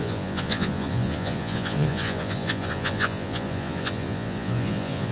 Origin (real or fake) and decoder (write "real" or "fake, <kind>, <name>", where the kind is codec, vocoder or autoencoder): fake, vocoder, Vocos